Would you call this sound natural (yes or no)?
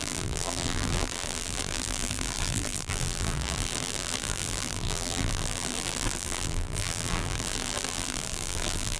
no